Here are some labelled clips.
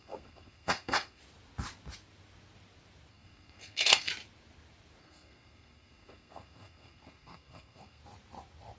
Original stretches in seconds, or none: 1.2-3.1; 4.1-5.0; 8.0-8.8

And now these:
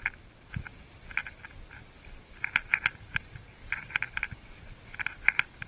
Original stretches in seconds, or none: 0.0-5.7

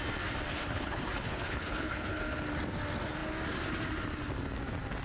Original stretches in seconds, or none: 0.0-0.5; 2.2-5.0

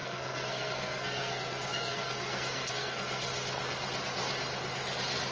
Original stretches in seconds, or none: 3.3-5.3

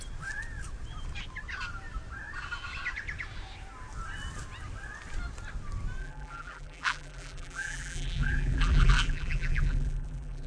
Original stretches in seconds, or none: 0.0-6.0

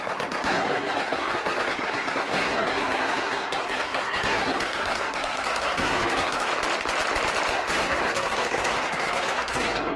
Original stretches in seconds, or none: 6.5-7.5